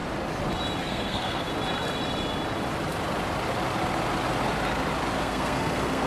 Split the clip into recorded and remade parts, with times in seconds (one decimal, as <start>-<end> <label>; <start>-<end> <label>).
0.0-0.8 recorded; 0.8-1.5 remade; 1.5-5.2 recorded; 5.2-6.1 remade